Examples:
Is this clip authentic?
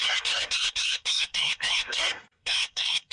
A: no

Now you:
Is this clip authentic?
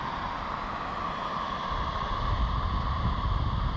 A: yes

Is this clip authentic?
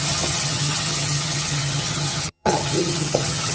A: no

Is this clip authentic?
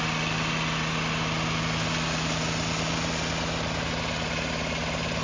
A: yes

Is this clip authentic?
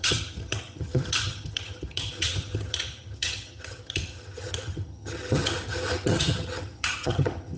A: no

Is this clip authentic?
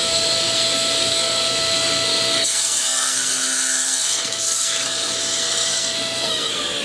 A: no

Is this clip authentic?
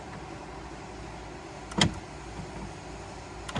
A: yes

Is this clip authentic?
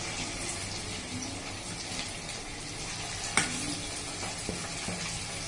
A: yes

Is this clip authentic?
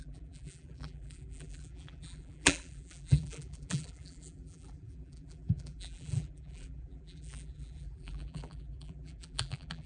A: no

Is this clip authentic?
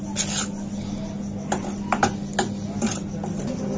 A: yes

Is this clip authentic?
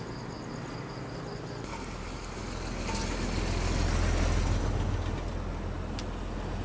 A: yes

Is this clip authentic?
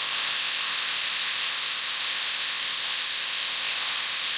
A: no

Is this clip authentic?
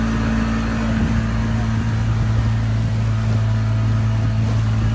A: yes